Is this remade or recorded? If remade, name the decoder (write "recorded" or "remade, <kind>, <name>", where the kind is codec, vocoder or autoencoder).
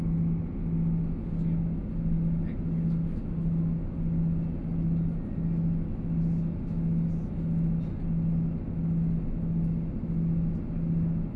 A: recorded